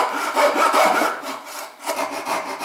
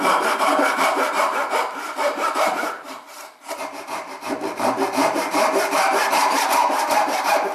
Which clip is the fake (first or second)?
second